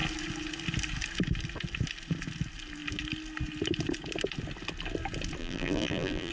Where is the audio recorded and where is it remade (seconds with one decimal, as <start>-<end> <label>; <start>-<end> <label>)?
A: 0.0-5.4 recorded; 5.4-6.3 remade